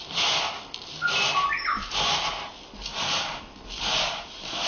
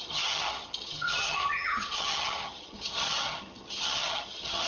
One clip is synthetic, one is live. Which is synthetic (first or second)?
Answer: second